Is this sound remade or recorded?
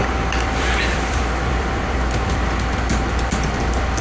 remade